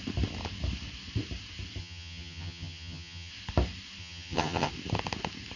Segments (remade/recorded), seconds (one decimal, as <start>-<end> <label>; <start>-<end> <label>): 0.0-1.8 recorded; 1.8-3.3 remade; 3.3-4.0 recorded; 4.0-4.7 remade; 4.7-5.6 recorded